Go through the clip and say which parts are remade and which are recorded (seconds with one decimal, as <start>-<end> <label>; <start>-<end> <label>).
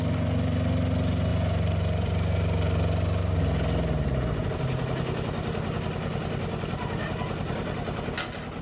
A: 0.0-1.3 recorded; 1.3-3.4 remade; 3.4-8.6 recorded